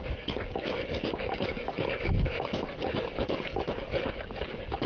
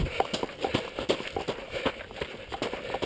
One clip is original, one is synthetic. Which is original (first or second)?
second